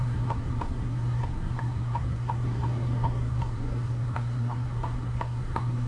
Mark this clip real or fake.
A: fake